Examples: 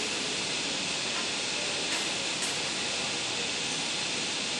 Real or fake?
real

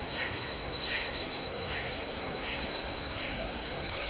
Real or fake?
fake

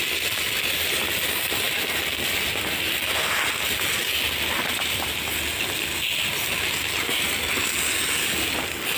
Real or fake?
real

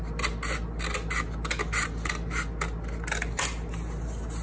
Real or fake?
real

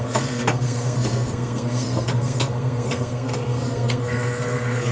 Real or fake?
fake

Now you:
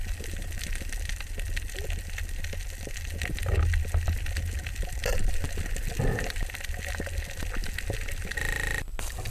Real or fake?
real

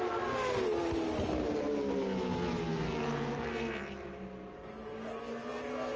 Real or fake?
real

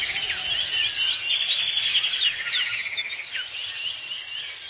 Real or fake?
real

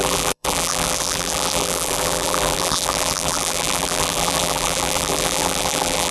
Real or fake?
fake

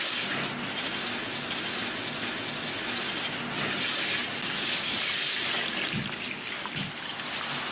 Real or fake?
real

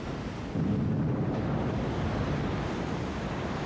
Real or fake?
real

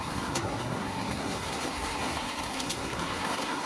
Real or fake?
fake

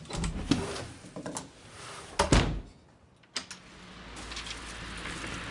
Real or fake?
real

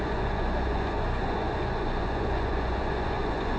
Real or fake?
fake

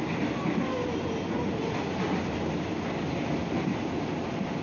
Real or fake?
real